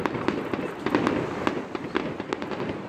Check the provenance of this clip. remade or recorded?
recorded